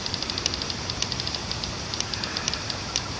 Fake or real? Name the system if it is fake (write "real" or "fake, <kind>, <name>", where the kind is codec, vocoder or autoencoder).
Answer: real